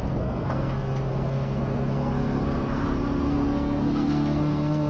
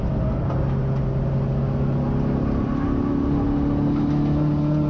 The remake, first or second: first